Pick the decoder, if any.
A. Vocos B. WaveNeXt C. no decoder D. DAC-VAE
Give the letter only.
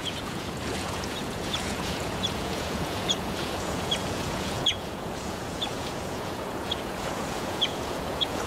A